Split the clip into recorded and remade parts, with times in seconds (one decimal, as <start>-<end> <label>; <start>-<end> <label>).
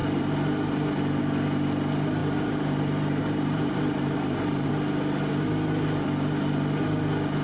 0.0-2.2 recorded; 2.2-4.7 remade; 4.7-7.4 recorded